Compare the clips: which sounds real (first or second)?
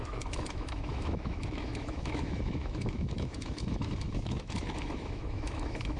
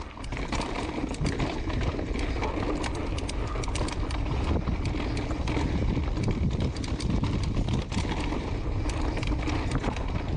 second